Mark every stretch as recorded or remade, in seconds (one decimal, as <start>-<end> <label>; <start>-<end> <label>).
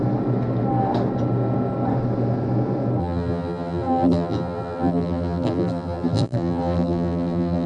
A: 0.0-3.0 recorded; 3.0-7.7 remade